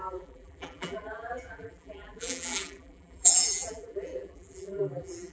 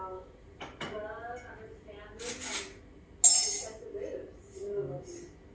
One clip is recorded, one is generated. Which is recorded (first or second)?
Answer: second